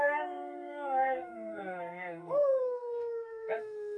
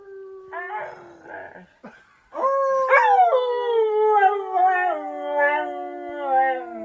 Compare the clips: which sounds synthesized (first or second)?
first